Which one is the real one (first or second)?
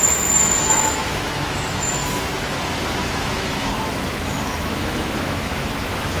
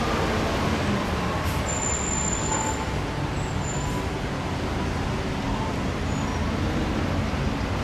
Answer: second